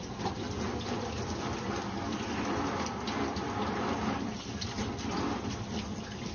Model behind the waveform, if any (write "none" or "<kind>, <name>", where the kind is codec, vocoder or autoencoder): vocoder, BigVGAN v2